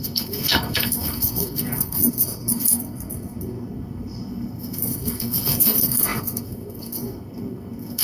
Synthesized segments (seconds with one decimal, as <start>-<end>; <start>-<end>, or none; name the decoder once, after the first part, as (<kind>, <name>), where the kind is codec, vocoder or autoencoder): 0.0-8.0 (codec, SNAC)